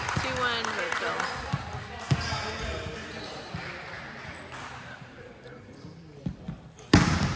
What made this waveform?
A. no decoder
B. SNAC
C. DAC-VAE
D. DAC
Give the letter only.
A